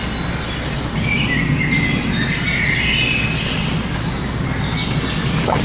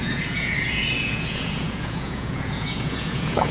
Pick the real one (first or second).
first